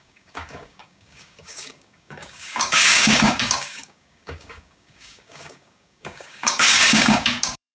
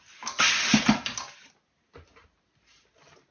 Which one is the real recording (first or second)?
second